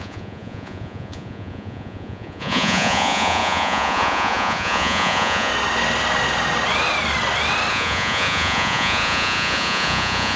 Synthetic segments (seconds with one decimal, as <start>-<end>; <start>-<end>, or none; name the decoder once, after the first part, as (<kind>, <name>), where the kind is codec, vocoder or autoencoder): 0.0-5.5 (vocoder, Vocos); 7.7-10.4